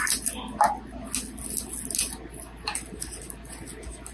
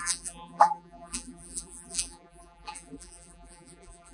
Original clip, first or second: first